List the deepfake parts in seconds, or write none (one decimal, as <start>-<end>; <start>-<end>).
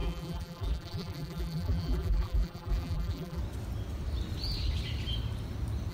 0.0-3.4